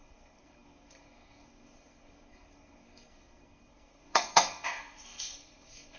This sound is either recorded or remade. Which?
remade